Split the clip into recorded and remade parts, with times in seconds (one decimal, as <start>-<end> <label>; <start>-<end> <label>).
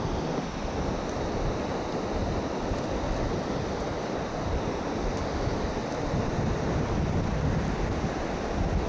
0.0-8.9 recorded